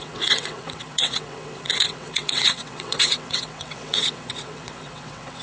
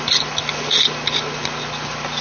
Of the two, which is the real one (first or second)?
second